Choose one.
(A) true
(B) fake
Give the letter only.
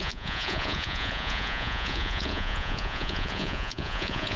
B